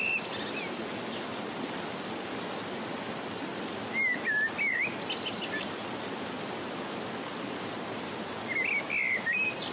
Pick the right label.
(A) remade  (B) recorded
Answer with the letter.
B